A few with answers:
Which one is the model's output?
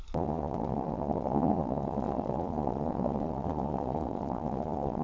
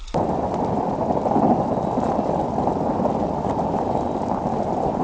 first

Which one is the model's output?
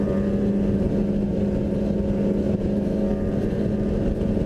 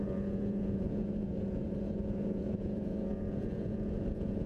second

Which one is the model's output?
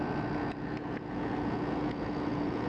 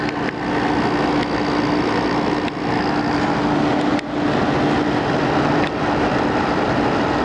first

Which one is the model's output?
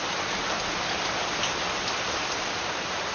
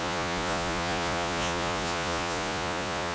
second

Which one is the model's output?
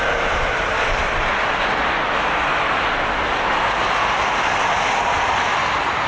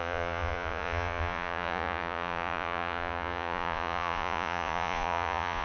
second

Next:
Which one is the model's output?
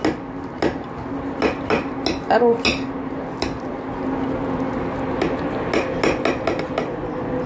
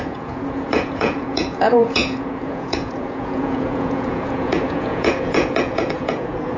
second